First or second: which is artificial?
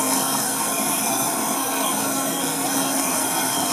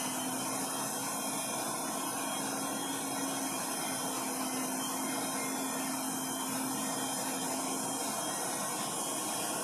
first